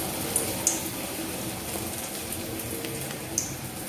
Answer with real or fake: real